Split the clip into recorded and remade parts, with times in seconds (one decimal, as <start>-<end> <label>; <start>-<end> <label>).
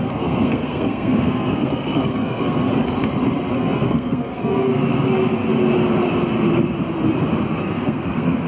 0.0-2.7 remade; 2.7-3.5 recorded; 3.5-5.4 remade; 5.4-7.6 recorded; 7.6-8.5 remade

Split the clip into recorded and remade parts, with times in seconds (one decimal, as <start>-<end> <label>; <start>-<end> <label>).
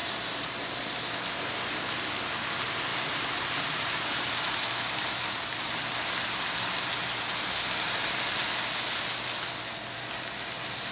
0.0-1.0 remade; 1.0-2.9 recorded; 2.9-4.0 remade; 4.0-10.9 recorded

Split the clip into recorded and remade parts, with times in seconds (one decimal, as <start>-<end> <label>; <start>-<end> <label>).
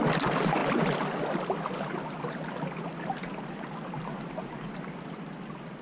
0.0-5.8 recorded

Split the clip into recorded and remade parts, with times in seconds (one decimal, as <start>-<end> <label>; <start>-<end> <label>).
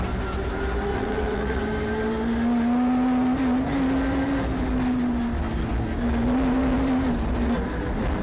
0.0-0.9 recorded; 0.9-1.6 remade; 1.6-8.2 recorded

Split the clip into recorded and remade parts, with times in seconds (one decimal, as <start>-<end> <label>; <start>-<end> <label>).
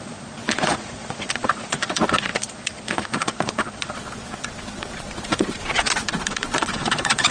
0.0-7.3 remade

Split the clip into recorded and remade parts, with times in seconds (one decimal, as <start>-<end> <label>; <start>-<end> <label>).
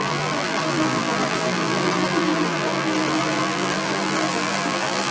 0.0-5.1 remade